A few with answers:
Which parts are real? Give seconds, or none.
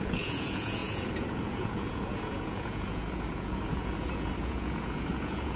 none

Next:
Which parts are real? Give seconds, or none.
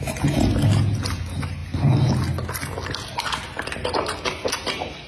0.0-5.1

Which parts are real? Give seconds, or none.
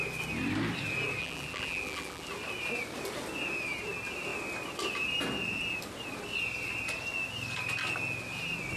0.0-1.2; 2.3-8.8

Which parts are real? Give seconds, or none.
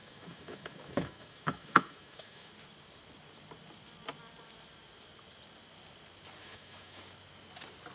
2.5-6.4; 7.0-7.9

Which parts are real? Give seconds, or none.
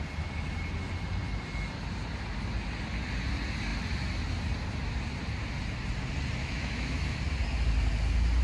0.0-6.4; 7.2-8.4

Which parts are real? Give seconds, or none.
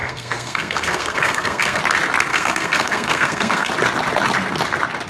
1.8-2.3; 3.7-5.1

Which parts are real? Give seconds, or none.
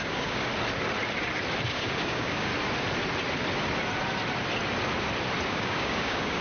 0.5-1.7; 2.5-5.5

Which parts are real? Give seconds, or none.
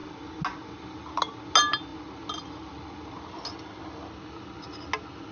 0.0-5.3